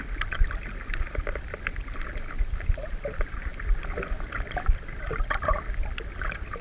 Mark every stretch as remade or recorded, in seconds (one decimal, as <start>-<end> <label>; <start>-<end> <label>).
0.0-6.6 recorded